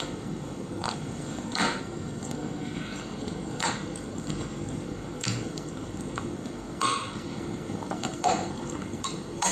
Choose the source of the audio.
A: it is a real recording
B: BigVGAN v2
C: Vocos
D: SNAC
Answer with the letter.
D